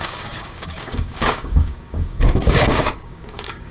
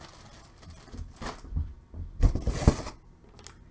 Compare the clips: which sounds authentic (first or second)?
second